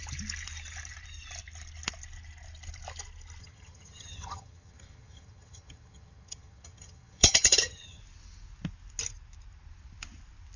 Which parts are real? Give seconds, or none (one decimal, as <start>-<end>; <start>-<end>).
0.0-3.4; 8.0-10.6